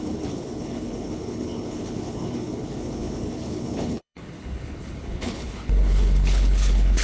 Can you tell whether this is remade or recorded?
remade